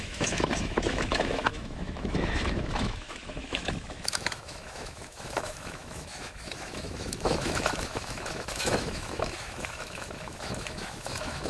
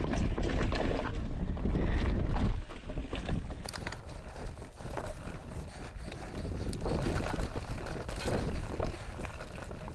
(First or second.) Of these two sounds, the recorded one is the second